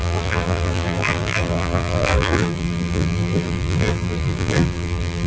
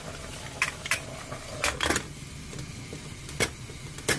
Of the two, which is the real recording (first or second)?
second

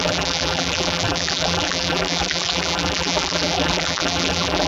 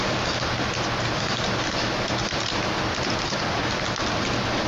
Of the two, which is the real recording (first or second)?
second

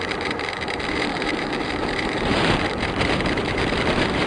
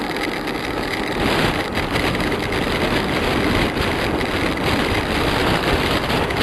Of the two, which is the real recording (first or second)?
second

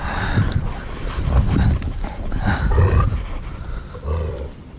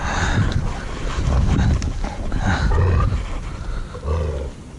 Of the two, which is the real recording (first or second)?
second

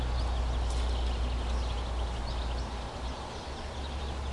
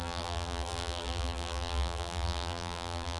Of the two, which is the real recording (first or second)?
first